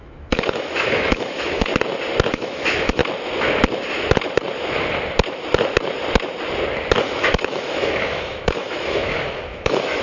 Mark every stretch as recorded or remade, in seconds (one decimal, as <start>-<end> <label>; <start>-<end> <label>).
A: 0.0-1.7 remade; 1.7-2.3 recorded; 2.3-3.0 remade; 3.0-7.0 recorded; 7.0-10.0 remade